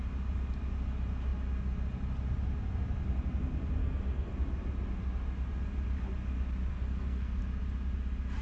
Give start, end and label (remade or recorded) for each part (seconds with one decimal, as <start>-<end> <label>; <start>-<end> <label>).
0.0-3.8 recorded; 3.8-4.3 remade; 4.3-6.7 recorded; 6.7-7.4 remade; 7.4-8.4 recorded